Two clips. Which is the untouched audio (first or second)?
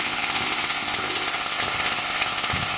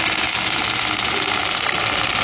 second